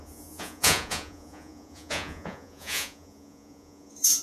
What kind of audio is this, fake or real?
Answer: fake